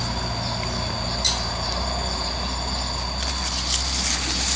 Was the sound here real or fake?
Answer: real